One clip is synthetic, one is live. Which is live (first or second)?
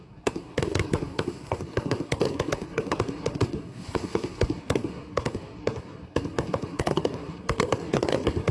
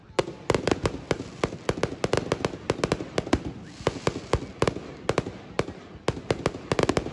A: second